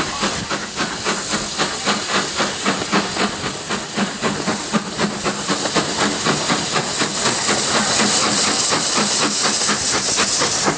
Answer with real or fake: real